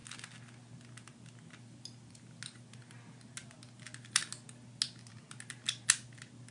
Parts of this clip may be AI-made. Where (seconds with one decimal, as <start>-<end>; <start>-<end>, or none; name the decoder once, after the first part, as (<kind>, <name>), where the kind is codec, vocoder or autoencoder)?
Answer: none